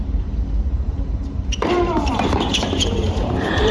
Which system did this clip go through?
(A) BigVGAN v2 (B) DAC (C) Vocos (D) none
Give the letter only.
A